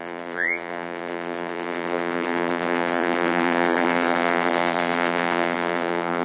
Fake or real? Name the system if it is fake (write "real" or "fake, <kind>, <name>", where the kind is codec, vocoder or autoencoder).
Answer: fake, vocoder, BigVGAN v2